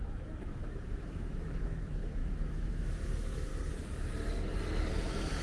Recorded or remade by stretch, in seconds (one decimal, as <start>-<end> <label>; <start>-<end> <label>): 0.0-3.5 remade; 3.5-4.9 recorded; 4.9-5.4 remade